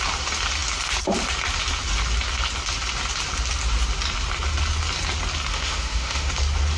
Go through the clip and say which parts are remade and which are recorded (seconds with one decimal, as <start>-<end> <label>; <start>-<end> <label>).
0.0-5.5 recorded; 5.5-6.3 remade; 6.3-6.8 recorded